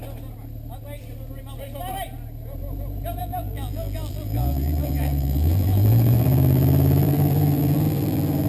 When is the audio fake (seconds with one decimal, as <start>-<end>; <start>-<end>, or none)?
3.2-8.5